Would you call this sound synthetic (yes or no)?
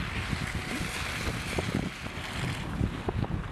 no